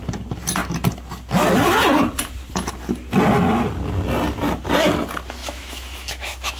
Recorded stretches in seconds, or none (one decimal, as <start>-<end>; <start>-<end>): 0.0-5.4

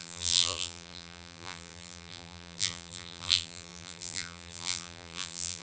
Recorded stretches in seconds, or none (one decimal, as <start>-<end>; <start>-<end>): none

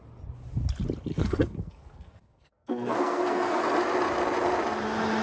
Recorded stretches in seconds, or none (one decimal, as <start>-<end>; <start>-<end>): 0.0-1.1; 3.6-5.2

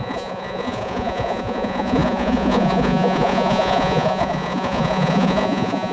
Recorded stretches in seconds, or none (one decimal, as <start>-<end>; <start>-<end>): none

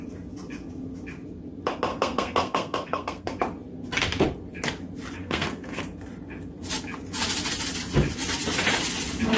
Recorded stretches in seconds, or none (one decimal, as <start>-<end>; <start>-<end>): 0.0-1.9; 3.4-5.2; 5.8-9.4

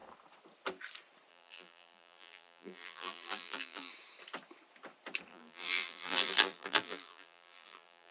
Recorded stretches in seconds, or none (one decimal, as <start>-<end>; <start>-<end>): 0.0-1.3; 3.9-5.3

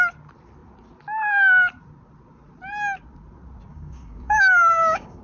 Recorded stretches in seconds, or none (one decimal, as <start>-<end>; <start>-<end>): 0.0-3.7

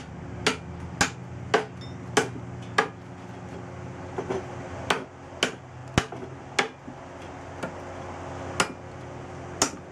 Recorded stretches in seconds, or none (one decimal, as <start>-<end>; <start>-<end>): 0.0-9.9